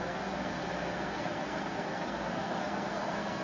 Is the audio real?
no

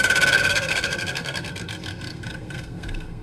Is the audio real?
no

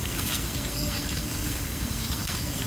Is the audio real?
no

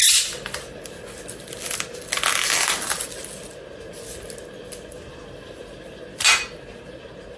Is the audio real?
yes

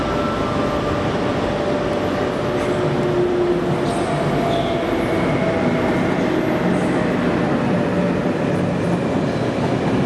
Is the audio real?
yes